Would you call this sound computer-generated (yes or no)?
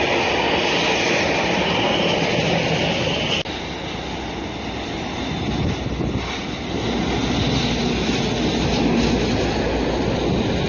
no